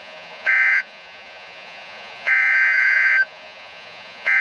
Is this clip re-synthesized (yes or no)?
yes